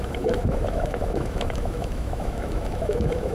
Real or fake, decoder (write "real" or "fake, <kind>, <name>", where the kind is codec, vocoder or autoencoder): fake, autoencoder, DAC-VAE